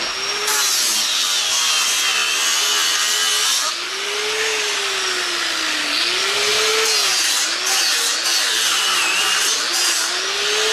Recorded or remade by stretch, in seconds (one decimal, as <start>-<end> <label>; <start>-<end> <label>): 0.0-10.7 recorded